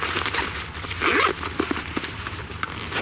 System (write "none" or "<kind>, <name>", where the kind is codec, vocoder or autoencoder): none